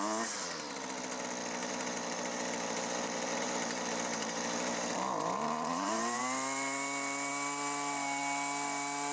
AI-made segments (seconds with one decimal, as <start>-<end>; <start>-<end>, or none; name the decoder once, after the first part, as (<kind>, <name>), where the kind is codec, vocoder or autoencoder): 1.6-6.2 (vocoder, BigVGAN v2)